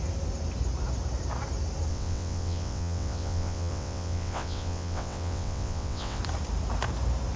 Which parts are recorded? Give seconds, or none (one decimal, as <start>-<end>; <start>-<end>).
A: 0.0-1.9; 6.2-7.4